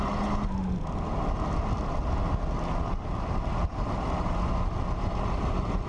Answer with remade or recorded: recorded